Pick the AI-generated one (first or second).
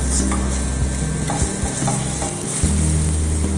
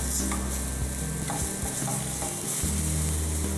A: second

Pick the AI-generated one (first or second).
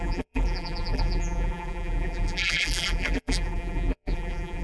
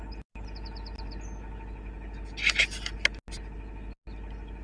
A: first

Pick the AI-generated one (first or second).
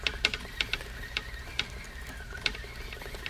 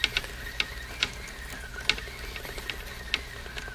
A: first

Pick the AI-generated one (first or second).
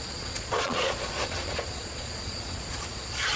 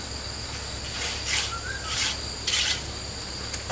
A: first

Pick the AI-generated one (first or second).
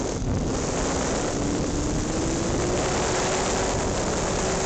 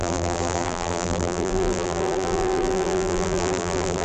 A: second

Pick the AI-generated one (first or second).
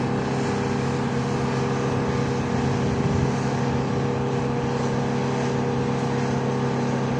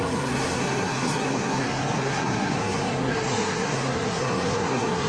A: second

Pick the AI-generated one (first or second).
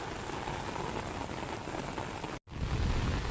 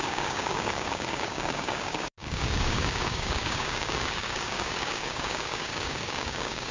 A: second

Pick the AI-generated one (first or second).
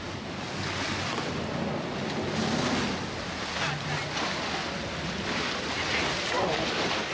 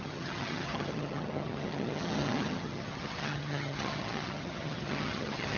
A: second